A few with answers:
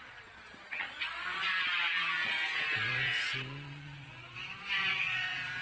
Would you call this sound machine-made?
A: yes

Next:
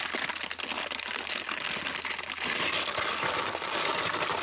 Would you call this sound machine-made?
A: no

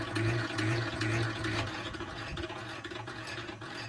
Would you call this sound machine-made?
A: yes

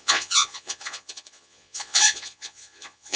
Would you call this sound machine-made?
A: yes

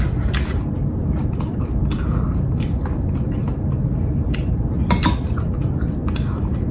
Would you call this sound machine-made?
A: no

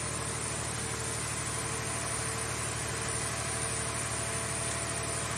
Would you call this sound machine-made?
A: no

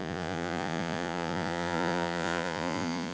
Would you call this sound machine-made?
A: yes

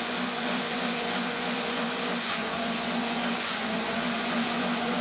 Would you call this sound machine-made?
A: yes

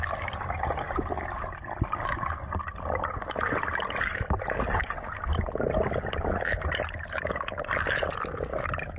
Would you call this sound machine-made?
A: no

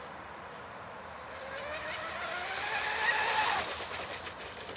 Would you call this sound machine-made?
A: no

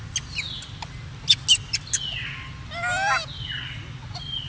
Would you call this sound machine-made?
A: no